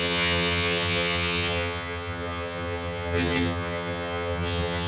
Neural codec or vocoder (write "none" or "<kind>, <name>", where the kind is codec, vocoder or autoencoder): vocoder, HiFi-GAN